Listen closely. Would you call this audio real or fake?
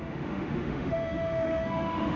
fake